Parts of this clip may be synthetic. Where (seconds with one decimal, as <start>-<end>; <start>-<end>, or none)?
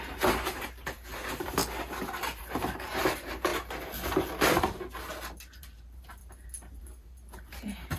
0.0-1.6; 2.4-3.5; 5.6-6.2; 6.8-8.0